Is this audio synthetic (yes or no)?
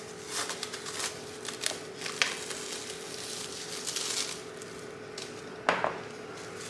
no